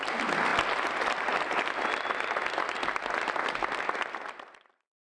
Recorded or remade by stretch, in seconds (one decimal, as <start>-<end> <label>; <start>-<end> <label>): 0.0-5.1 recorded

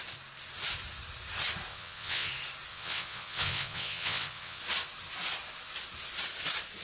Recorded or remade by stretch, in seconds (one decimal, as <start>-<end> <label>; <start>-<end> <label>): 0.0-1.7 recorded; 1.7-2.3 remade; 2.3-2.7 recorded; 2.7-4.6 remade; 4.6-6.8 recorded

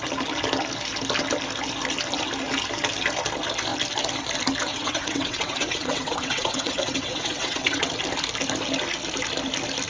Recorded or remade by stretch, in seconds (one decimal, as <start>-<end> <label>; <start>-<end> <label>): 0.0-4.7 recorded; 4.7-7.9 remade; 7.9-9.9 recorded

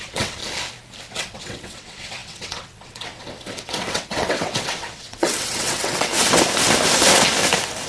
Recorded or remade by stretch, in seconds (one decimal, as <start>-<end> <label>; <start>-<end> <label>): 0.0-0.4 remade; 0.4-1.1 recorded; 1.1-6.1 remade; 6.1-7.9 recorded

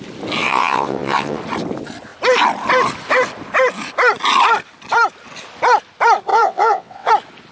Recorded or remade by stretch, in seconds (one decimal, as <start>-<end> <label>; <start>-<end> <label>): 0.0-0.4 recorded; 0.4-1.4 remade; 1.4-6.3 recorded; 6.3-7.1 remade; 7.1-7.5 recorded

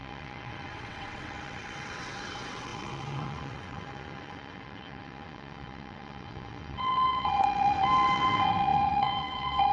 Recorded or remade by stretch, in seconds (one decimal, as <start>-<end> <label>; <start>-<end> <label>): 0.0-9.7 remade